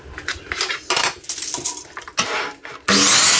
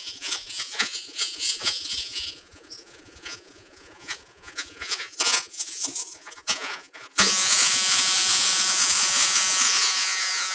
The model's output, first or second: second